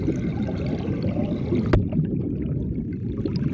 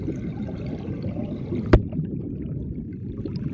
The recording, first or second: first